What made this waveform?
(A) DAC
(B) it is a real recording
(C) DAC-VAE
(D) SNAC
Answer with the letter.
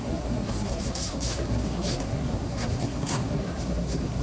D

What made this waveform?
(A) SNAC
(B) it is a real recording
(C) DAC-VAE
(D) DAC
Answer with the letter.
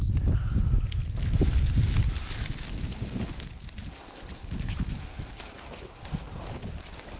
B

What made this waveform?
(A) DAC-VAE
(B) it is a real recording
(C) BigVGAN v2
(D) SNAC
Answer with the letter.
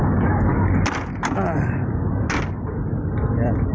B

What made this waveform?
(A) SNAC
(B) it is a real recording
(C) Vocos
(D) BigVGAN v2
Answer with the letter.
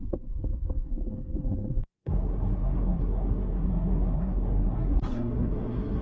A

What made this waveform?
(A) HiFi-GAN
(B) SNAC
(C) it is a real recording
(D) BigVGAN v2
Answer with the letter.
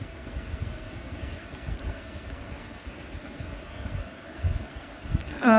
B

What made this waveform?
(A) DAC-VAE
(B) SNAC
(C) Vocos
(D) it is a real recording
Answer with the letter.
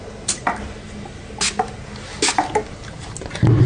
D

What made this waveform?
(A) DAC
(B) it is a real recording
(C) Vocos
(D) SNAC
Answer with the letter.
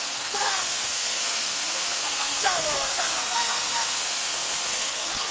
D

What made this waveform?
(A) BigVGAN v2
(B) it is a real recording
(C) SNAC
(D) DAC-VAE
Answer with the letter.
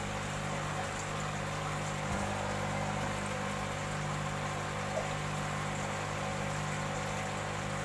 B